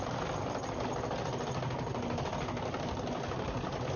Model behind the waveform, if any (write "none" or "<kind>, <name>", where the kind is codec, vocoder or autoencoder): none